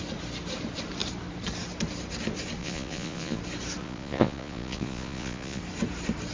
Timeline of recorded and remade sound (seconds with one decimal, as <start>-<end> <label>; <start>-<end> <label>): 0.0-2.6 recorded; 2.6-3.4 remade; 3.4-3.8 recorded; 3.8-5.6 remade; 5.6-6.3 recorded